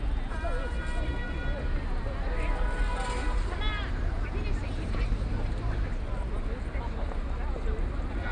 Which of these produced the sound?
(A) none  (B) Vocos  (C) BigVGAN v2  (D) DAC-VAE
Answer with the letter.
A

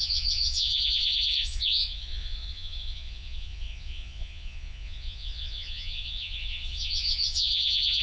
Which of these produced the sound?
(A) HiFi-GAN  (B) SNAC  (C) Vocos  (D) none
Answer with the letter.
C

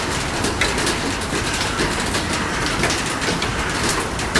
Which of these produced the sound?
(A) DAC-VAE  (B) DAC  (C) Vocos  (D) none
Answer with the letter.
D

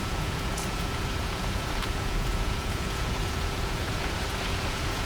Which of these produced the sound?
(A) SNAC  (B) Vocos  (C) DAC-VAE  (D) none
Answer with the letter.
B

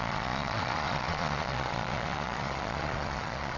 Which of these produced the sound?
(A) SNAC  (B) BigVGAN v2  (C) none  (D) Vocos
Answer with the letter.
D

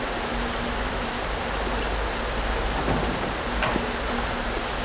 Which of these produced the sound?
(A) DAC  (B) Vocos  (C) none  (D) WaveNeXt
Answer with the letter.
C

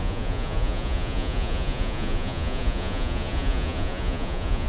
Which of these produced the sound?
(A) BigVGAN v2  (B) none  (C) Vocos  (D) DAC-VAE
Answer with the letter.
C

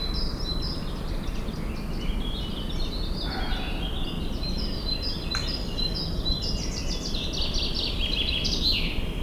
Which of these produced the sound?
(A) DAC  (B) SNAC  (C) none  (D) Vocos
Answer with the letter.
C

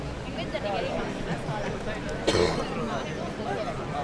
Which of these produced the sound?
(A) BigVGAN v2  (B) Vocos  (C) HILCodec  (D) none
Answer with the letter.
D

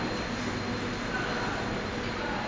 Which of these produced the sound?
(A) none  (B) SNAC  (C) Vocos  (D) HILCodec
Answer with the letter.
A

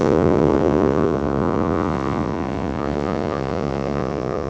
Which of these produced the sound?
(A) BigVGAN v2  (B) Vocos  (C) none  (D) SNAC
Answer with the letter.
B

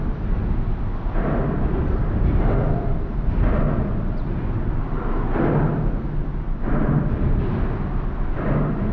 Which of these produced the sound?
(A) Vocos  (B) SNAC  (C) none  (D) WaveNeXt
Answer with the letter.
C